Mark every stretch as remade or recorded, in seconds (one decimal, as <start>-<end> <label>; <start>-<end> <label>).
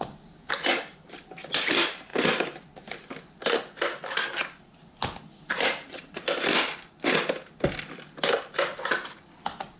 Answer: 0.0-9.8 recorded